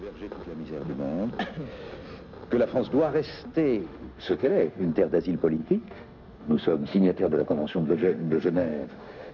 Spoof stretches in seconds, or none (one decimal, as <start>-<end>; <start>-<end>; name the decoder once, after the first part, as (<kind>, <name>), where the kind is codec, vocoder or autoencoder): 3.8-4.9 (autoencoder, DAC-VAE); 5.6-9.3